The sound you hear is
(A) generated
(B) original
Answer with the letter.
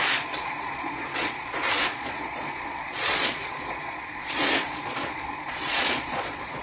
A